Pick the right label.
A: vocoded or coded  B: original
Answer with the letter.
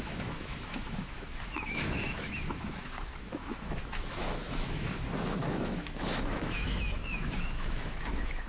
A